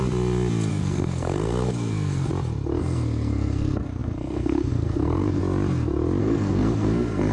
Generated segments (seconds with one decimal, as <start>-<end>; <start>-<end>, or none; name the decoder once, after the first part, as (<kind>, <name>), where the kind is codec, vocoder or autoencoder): 0.7-2.3 (codec, SNAC); 2.8-5.4; 6.2-7.3